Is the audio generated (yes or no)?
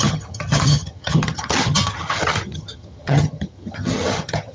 yes